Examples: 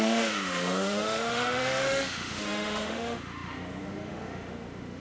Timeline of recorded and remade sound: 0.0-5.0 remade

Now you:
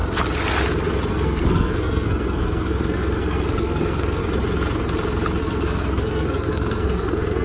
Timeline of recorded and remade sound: 0.0-1.1 recorded; 1.1-4.2 remade; 4.2-5.4 recorded; 5.4-7.4 remade

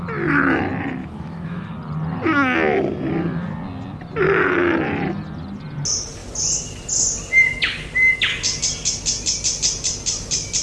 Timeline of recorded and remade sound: 0.0-1.0 recorded; 1.0-1.7 remade; 1.7-10.6 recorded